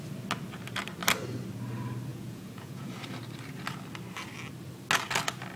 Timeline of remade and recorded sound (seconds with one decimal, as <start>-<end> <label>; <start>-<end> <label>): 0.0-2.1 recorded; 2.1-2.9 remade; 2.9-5.6 recorded